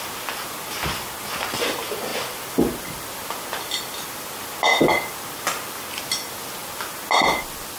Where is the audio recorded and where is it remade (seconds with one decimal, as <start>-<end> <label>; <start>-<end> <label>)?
0.0-7.8 recorded